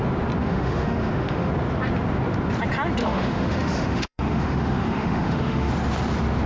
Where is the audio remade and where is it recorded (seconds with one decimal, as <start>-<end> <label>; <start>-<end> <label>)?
0.0-0.4 recorded; 0.4-1.5 remade; 1.5-3.0 recorded; 3.0-5.7 remade; 5.7-6.5 recorded